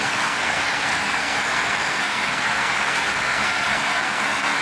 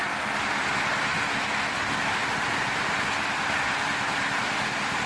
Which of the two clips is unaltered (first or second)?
second